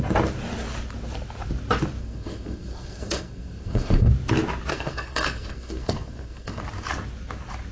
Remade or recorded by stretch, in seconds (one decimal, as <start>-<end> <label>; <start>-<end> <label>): 0.0-2.0 recorded; 2.0-4.1 remade; 4.1-4.7 recorded; 4.7-6.6 remade; 6.6-7.7 recorded